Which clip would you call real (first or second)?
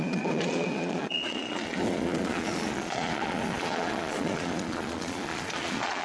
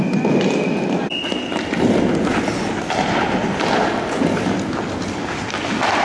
second